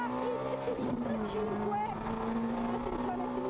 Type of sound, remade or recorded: recorded